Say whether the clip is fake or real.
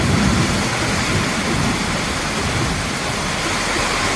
real